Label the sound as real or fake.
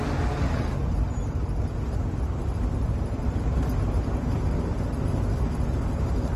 real